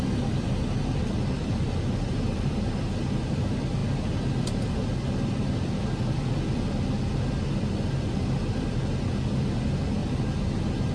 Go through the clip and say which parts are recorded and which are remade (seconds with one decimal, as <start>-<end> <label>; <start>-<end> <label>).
0.0-1.0 recorded; 1.0-2.9 remade; 2.9-10.0 recorded; 10.0-10.9 remade